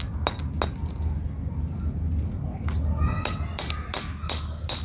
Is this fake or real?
real